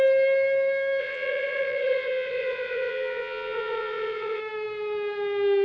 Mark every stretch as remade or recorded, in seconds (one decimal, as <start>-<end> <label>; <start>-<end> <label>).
0.0-1.0 recorded; 1.0-4.4 remade; 4.4-5.6 recorded